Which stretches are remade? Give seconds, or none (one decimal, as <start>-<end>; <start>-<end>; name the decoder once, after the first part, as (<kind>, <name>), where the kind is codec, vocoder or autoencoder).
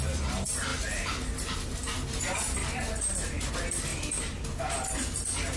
none